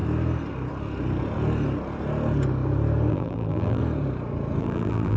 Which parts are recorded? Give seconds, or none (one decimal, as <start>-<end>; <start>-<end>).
0.0-3.1; 3.8-4.6